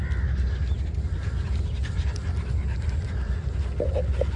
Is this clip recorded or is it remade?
recorded